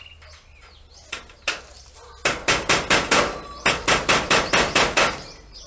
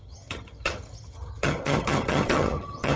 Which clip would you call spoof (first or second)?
second